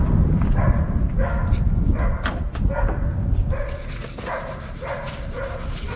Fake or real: real